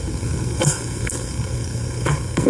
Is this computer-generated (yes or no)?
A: yes